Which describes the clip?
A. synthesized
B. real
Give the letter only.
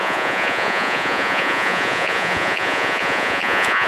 A